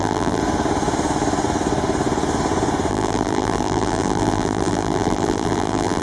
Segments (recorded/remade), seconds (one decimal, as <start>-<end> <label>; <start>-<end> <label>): 0.0-0.4 remade; 0.4-2.9 recorded; 2.9-6.0 remade